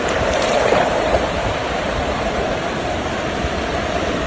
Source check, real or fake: fake